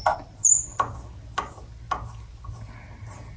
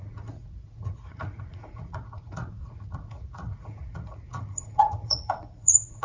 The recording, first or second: first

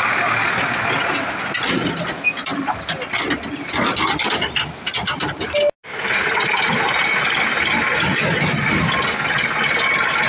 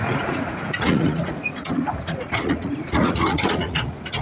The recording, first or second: first